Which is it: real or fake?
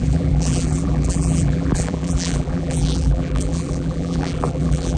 fake